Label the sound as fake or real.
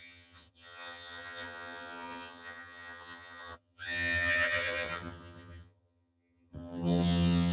fake